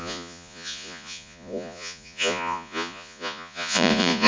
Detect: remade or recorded remade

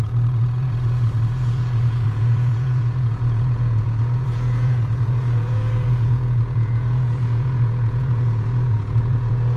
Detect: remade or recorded remade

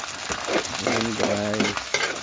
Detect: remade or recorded recorded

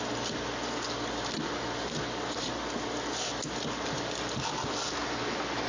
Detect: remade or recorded recorded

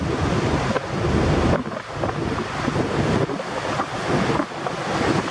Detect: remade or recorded recorded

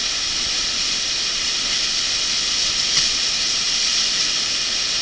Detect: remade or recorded recorded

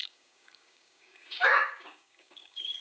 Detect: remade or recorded remade